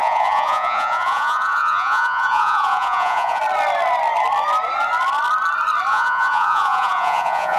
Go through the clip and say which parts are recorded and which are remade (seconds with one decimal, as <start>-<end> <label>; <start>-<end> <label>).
0.0-3.4 remade; 3.4-5.9 recorded; 5.9-7.6 remade

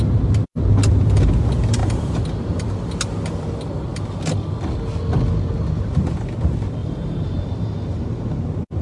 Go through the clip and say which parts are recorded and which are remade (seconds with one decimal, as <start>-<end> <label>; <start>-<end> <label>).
0.0-1.8 recorded; 1.8-2.9 remade; 2.9-6.8 recorded; 6.8-8.4 remade; 8.4-8.8 recorded